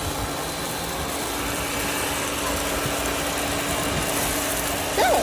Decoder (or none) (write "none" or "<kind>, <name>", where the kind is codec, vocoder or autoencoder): none